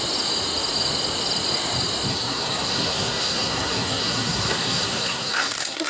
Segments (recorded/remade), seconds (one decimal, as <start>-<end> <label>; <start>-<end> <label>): 0.0-2.1 recorded; 2.1-5.9 remade

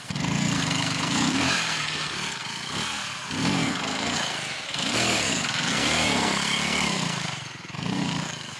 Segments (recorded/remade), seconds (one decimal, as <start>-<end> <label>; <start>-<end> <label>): 0.0-8.6 remade

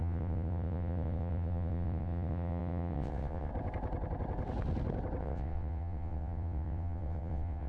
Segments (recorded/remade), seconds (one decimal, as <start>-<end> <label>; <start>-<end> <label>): 0.0-3.5 remade; 3.5-5.2 recorded; 5.2-7.7 remade

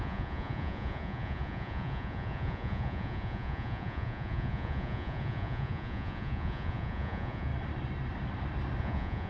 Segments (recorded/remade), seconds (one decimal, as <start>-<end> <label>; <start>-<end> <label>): 0.0-7.5 remade; 7.5-8.8 recorded; 8.8-9.3 remade

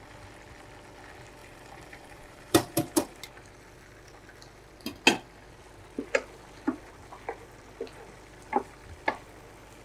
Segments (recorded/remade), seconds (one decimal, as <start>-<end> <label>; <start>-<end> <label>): 0.0-1.4 recorded; 1.4-3.2 remade; 3.2-9.8 recorded

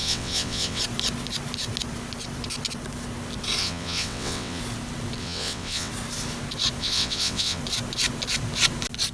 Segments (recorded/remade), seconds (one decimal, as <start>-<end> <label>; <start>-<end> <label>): 0.0-0.8 remade; 0.8-3.6 recorded; 3.6-4.6 remade; 4.6-5.2 recorded; 5.2-5.9 remade; 5.9-6.8 recorded; 6.8-7.6 remade; 7.6-9.1 recorded

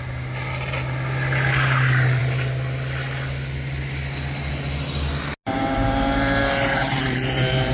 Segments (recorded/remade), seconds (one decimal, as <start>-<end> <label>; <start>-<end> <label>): 0.0-6.8 recorded; 6.8-7.7 remade

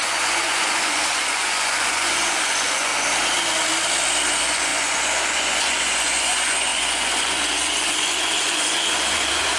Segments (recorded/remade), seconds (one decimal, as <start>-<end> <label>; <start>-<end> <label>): 0.0-2.9 remade; 2.9-4.3 recorded; 4.3-9.6 remade